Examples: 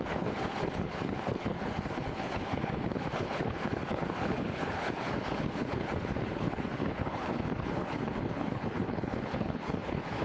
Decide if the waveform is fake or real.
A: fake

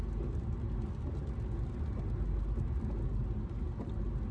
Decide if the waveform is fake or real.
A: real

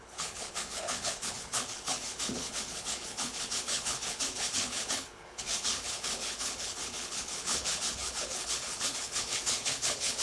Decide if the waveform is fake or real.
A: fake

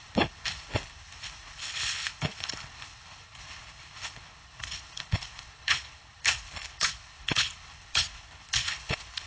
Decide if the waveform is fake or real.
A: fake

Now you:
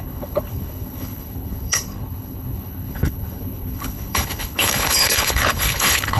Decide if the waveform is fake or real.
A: fake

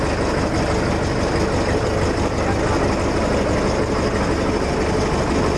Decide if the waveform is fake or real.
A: real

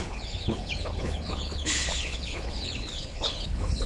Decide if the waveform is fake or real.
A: fake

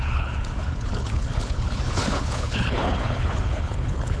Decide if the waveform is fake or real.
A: fake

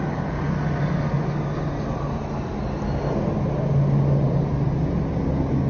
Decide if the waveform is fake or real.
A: real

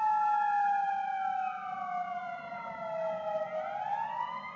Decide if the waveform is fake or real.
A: real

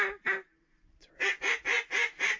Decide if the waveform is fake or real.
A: real